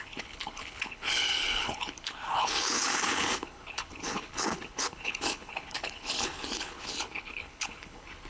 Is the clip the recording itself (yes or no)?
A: no